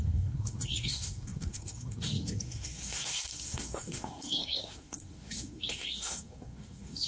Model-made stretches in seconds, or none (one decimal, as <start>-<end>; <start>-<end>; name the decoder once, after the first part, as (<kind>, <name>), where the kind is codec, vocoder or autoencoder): 0.0-7.1 (codec, SNAC)